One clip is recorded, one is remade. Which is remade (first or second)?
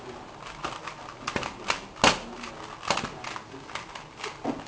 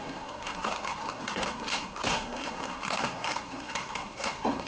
second